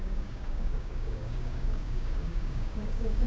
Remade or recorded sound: remade